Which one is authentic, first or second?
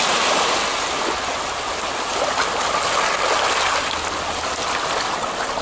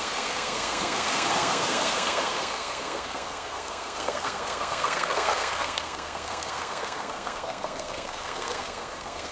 first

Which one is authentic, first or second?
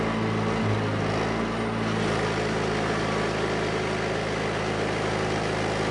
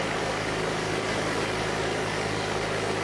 first